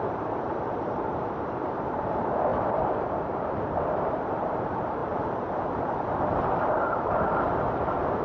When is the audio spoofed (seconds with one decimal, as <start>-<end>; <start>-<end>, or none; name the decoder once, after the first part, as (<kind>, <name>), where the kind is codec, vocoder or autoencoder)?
0.0-8.2 (vocoder, BigVGAN v2)